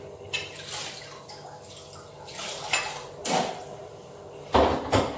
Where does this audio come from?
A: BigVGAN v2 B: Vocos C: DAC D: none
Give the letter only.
D